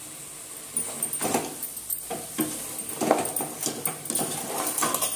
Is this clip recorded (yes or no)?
yes